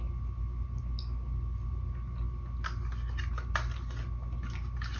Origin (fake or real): real